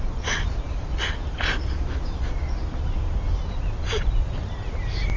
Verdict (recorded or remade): recorded